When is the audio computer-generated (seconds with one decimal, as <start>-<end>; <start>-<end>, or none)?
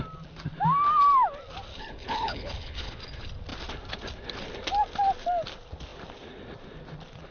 1.7-3.0